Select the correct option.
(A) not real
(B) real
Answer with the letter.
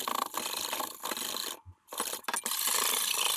B